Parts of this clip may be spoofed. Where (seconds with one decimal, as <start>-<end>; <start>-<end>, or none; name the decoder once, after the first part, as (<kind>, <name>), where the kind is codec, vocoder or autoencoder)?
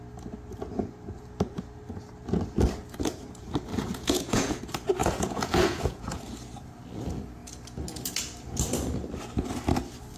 3.7-4.6 (vocoder, Vocos); 5.0-6.2